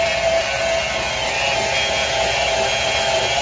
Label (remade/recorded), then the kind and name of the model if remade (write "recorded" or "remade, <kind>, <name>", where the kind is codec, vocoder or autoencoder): recorded